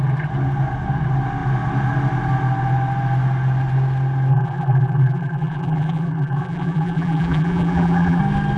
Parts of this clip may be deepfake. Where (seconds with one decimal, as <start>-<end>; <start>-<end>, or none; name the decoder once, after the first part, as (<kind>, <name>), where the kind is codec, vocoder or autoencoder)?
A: 4.3-8.2 (vocoder, BigVGAN v2)